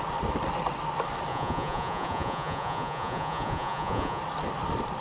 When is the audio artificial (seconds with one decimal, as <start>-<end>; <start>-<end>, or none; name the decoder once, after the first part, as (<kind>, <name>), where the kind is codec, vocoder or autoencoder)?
1.3-4.2 (vocoder, Vocos)